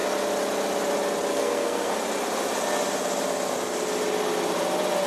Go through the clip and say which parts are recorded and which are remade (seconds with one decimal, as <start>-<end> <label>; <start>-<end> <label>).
0.0-1.3 recorded; 1.3-1.9 remade; 1.9-5.1 recorded